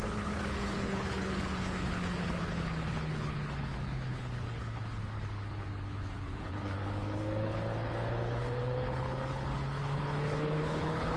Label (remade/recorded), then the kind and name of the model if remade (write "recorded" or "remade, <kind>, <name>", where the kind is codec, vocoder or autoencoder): remade, codec, HILCodec